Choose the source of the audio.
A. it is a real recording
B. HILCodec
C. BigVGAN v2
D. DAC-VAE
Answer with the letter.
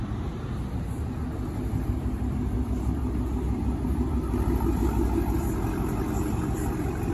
A